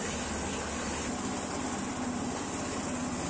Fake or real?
real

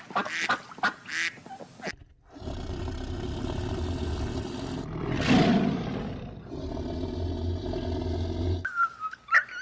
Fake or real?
real